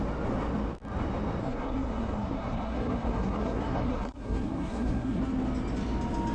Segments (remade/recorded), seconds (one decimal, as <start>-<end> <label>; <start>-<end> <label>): 0.0-1.4 recorded; 1.4-5.2 remade; 5.2-6.3 recorded